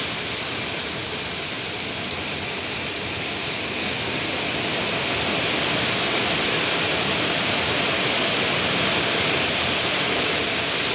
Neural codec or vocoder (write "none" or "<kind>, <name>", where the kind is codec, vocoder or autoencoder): none